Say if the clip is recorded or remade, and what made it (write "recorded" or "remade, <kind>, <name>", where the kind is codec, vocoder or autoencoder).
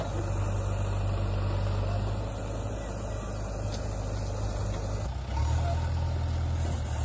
recorded